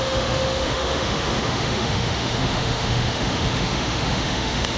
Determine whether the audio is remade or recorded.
remade